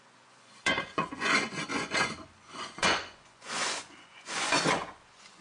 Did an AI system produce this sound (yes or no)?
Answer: yes